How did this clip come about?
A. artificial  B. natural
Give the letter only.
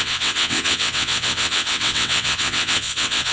A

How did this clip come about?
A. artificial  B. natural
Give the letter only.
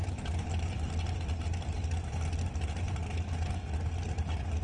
B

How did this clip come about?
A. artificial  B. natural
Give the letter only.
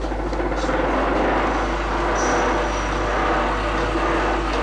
B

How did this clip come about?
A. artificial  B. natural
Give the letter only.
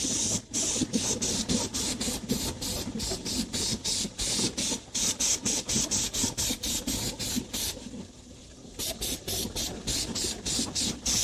B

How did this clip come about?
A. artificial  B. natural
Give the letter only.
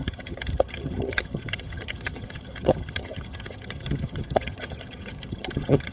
A